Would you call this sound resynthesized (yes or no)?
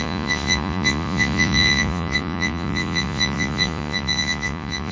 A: yes